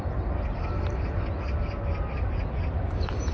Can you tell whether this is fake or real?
real